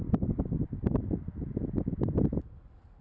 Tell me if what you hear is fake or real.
real